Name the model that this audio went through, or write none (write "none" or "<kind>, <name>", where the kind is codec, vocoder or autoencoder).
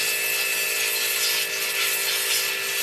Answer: none